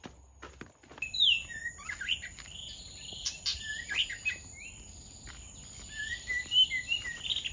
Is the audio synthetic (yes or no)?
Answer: no